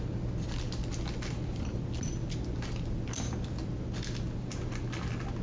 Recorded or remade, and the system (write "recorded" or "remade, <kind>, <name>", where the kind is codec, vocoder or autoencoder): recorded